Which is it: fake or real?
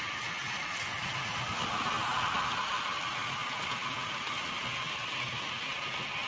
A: real